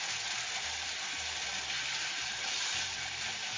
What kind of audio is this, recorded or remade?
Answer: remade